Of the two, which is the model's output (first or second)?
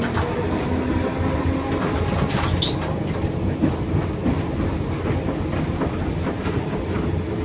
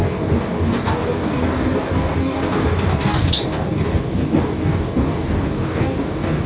second